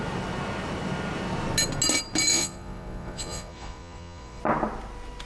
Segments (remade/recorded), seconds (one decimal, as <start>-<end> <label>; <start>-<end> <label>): 0.0-2.3 recorded; 2.3-4.4 remade; 4.4-5.3 recorded